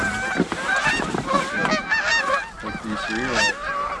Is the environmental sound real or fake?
real